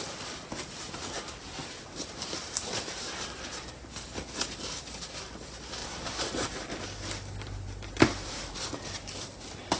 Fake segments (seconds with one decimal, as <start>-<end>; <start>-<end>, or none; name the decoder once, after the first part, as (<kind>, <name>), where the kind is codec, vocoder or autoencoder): 1.6-3.4 (vocoder, BigVGAN v2); 5.8-8.6